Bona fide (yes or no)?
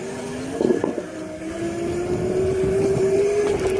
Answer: yes